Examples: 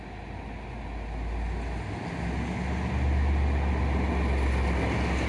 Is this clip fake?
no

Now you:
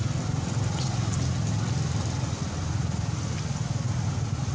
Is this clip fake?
no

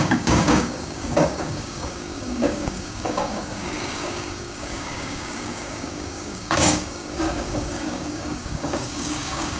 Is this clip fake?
yes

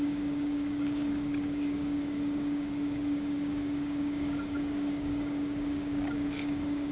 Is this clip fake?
yes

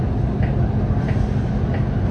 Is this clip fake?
no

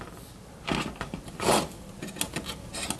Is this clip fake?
no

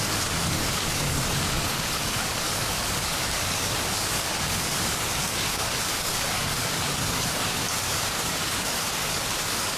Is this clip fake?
yes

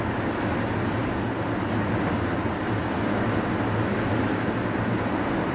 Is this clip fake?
no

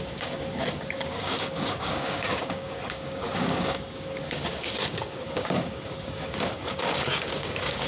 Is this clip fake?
yes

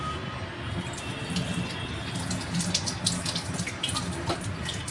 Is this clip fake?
no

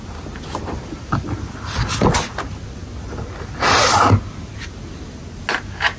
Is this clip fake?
no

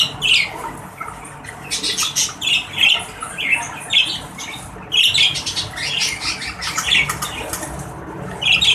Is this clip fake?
no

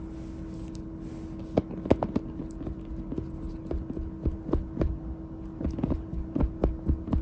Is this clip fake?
no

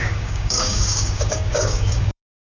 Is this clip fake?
yes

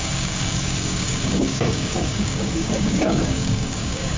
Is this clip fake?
yes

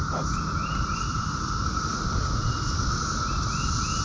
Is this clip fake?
no